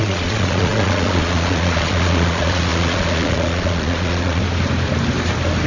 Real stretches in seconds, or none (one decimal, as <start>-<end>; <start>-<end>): 4.4-5.7